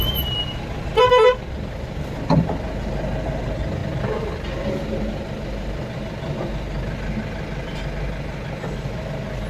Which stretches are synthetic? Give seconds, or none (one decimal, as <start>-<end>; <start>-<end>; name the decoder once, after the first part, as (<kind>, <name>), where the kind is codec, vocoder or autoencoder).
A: none